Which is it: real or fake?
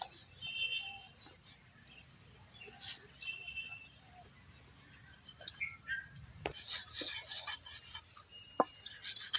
real